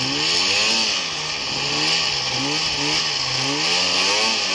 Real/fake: real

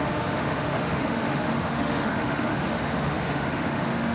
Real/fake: fake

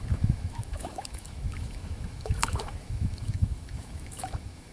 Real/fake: fake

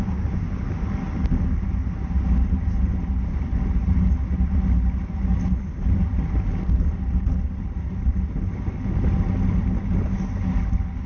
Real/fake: real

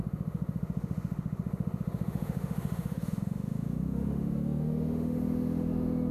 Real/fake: fake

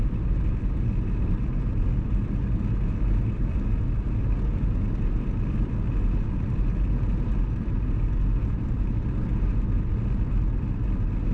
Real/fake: real